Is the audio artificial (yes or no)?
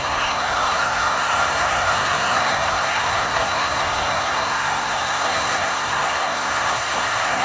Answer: yes